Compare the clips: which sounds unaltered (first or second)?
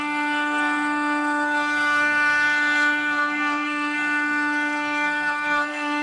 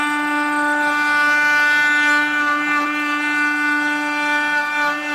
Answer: second